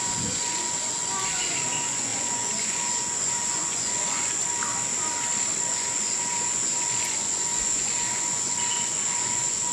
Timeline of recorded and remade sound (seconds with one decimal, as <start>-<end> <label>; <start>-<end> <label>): 0.0-4.4 remade; 4.4-5.7 recorded; 5.7-9.7 remade